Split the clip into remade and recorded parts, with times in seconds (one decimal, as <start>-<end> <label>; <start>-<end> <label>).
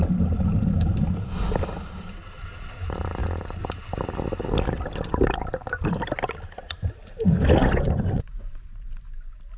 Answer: 0.0-7.6 recorded; 7.6-8.6 remade; 8.6-9.6 recorded